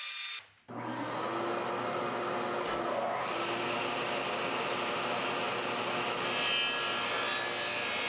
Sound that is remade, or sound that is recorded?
recorded